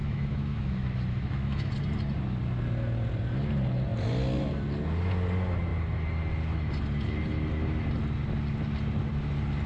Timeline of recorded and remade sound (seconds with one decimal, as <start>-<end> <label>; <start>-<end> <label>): 0.0-1.7 remade; 1.7-9.7 recorded